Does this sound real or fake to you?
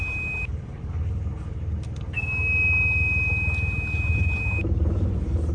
real